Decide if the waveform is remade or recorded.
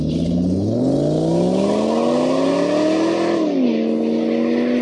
recorded